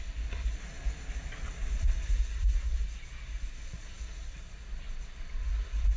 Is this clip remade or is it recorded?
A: recorded